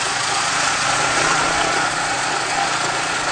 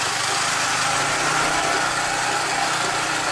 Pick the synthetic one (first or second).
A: first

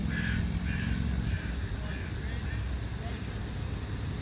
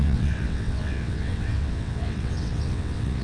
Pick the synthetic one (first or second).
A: second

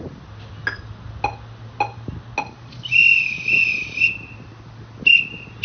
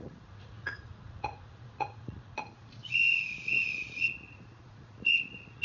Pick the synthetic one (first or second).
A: second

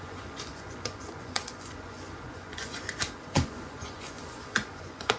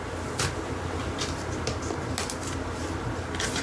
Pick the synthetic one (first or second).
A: first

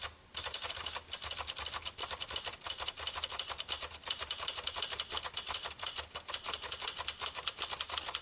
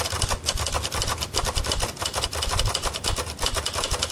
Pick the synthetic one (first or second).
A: second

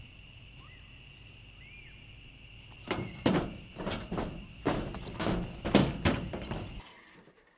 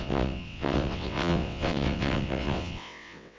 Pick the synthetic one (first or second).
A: second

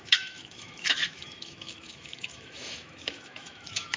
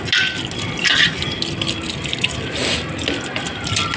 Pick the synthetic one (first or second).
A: first